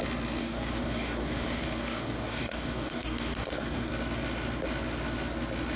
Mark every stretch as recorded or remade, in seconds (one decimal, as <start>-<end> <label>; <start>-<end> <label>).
0.0-0.4 recorded; 0.4-3.9 remade; 3.9-5.8 recorded

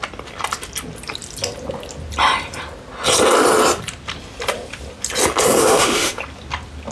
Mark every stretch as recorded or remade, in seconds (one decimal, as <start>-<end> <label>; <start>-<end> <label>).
0.0-5.6 recorded; 5.6-6.2 remade; 6.2-6.9 recorded

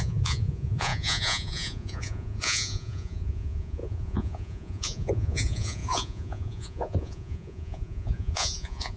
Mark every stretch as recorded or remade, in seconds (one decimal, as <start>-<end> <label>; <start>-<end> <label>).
0.0-9.0 remade

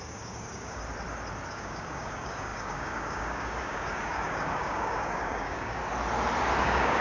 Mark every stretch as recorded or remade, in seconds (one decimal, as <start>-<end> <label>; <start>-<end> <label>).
0.0-0.8 remade; 0.8-1.5 recorded; 1.5-5.8 remade; 5.8-6.6 recorded; 6.6-7.0 remade

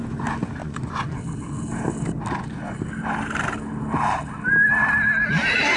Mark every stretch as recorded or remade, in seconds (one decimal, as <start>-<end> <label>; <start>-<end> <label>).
0.0-0.6 recorded; 0.6-1.2 remade; 1.2-5.8 recorded

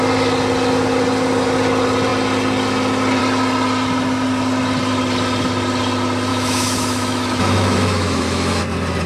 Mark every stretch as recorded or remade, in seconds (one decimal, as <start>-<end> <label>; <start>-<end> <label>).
0.0-6.3 recorded; 6.3-8.6 remade; 8.6-9.1 recorded

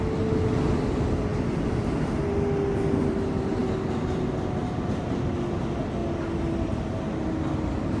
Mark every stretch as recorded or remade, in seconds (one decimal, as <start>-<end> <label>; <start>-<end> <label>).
0.0-8.0 recorded